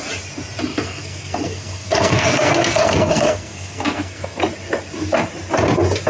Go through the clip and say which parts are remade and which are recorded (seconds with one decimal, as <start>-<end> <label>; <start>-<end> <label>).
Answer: 0.0-0.7 recorded; 0.7-4.4 remade; 4.4-6.1 recorded